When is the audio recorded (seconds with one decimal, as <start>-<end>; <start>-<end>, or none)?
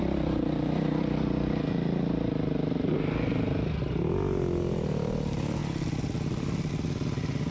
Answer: 0.0-7.5